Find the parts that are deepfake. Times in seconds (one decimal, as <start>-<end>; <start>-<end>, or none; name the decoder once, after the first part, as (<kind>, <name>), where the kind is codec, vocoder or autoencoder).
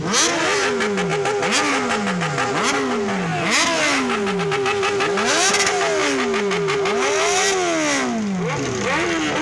none